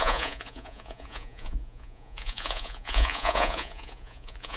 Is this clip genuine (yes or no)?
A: no